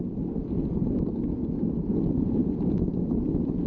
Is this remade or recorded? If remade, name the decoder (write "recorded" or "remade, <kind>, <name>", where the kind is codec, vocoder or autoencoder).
recorded